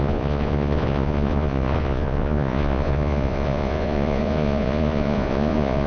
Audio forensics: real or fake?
fake